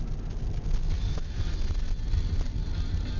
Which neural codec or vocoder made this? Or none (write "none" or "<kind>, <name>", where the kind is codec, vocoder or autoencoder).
none